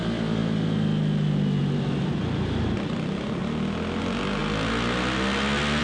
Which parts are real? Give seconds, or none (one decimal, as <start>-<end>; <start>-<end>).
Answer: 0.4-1.6; 3.4-4.0; 4.4-5.8